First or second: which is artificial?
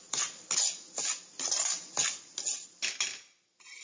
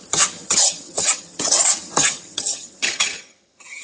second